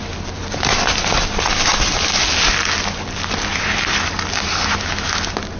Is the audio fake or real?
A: real